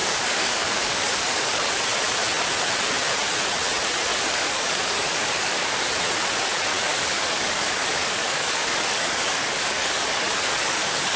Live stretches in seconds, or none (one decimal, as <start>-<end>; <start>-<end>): 1.8-4.1; 5.9-6.9